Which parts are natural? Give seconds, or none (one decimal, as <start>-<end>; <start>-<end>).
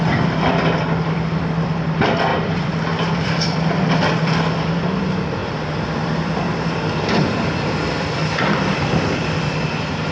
none